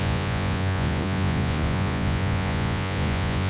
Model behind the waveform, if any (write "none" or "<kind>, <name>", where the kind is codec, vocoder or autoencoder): vocoder, Vocos